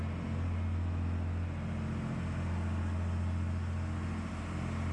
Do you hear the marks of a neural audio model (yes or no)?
no